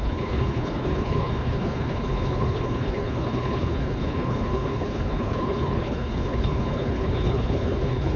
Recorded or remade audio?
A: remade